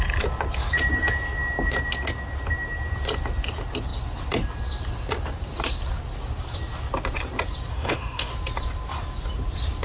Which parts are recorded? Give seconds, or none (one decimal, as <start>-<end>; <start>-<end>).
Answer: 0.0-7.7; 8.3-9.8